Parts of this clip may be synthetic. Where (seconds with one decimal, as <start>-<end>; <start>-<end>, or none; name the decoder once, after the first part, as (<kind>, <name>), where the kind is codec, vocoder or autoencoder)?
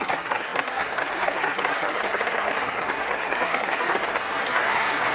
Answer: 0.0-5.1 (codec, SNAC)